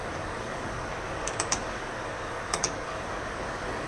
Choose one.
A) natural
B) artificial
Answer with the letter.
B